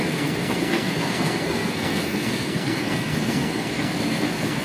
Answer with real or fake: fake